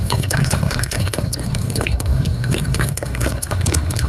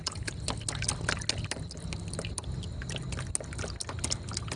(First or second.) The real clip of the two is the second